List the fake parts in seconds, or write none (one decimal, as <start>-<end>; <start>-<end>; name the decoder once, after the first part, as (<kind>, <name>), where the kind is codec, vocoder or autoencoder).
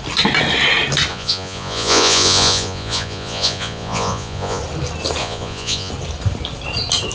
1.1-4.6 (vocoder, Vocos); 5.2-5.9